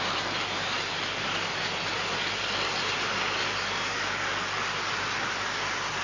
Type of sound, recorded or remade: recorded